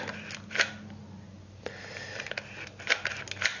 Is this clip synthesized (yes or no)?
no